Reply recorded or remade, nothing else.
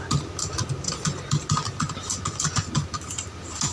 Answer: recorded